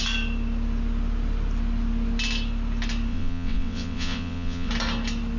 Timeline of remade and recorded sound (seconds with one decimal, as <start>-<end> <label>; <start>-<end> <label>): 0.0-3.1 recorded; 3.1-4.7 remade; 4.7-5.4 recorded